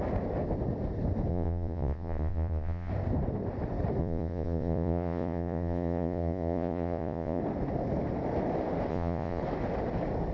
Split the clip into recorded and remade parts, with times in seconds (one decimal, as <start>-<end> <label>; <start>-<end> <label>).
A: 0.0-1.3 recorded; 1.3-2.9 remade; 2.9-4.0 recorded; 4.0-7.4 remade; 7.4-8.9 recorded; 8.9-9.4 remade; 9.4-10.3 recorded